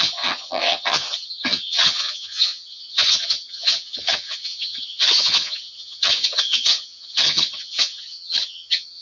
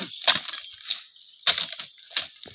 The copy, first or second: first